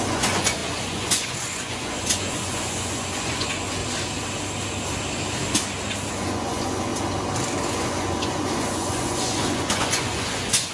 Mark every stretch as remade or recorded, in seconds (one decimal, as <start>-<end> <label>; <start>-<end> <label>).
0.0-3.8 remade; 3.8-6.1 recorded; 6.1-6.9 remade; 6.9-7.7 recorded; 7.7-10.7 remade